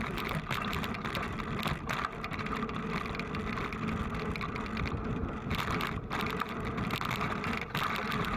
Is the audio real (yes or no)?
yes